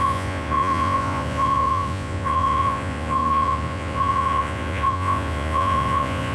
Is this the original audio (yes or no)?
no